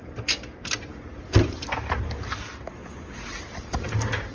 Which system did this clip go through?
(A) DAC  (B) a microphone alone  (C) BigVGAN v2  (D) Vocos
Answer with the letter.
C